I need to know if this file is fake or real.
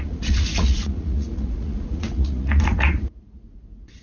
fake